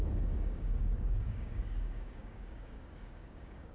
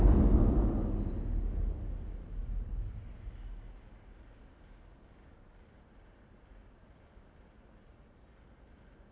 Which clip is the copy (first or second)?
first